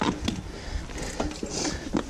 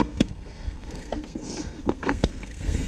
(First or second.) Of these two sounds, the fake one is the second